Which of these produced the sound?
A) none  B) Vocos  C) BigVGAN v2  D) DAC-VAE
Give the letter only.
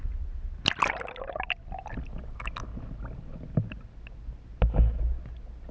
A